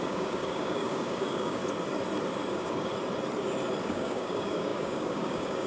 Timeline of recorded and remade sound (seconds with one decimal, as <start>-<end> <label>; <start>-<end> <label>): 0.0-1.6 remade; 1.6-2.5 recorded; 2.5-2.9 remade; 2.9-3.8 recorded; 3.8-5.7 remade